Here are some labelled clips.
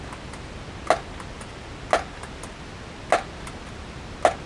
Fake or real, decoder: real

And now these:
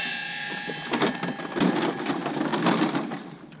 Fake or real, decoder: real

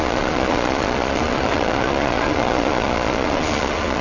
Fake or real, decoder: fake, vocoder, Vocos